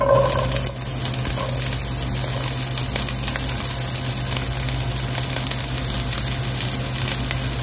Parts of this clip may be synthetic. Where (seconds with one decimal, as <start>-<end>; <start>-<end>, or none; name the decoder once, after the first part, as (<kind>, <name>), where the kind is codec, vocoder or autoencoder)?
none